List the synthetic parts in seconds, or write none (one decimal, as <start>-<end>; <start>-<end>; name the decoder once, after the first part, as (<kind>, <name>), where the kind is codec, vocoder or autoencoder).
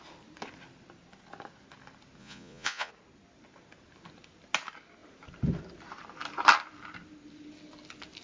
2.2-2.9 (vocoder, Vocos)